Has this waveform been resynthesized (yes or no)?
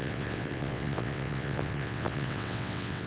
yes